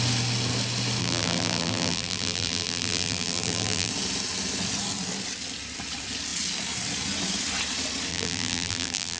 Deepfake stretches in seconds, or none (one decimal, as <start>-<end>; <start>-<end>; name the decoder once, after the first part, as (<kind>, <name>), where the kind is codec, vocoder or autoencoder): 1.0-3.9 (vocoder, BigVGAN v2); 8.1-9.2